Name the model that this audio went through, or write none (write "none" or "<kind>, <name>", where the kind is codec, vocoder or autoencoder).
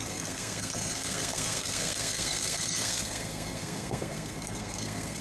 codec, SNAC